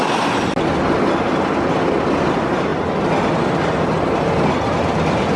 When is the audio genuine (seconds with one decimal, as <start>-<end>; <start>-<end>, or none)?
0.0-5.4